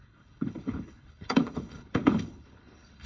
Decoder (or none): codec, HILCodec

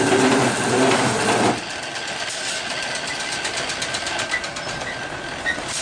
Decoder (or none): none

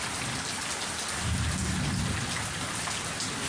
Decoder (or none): none